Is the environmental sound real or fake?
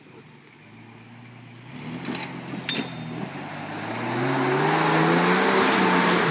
real